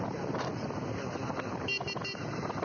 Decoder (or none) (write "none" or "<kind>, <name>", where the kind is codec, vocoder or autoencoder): none